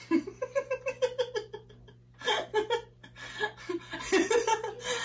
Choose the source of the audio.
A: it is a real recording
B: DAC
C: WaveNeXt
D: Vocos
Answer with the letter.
A